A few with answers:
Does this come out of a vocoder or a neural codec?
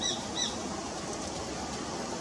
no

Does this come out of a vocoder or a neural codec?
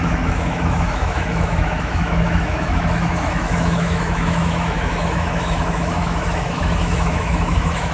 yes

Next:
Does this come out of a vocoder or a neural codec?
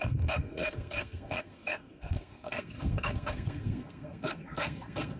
yes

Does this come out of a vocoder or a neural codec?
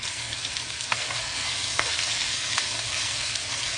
yes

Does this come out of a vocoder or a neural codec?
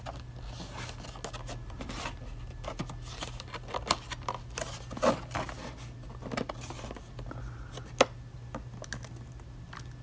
no